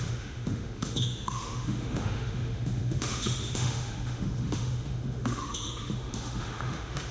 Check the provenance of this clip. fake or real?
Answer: fake